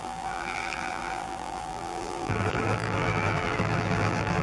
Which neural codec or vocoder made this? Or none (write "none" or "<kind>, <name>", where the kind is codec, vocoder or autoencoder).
vocoder, BigVGAN v2